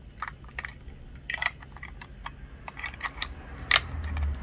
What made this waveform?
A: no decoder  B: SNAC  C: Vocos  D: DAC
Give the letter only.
A